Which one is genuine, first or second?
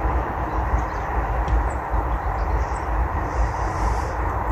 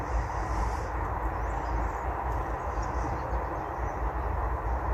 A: second